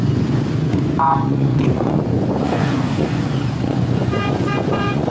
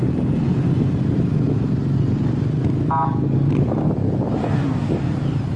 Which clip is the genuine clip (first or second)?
second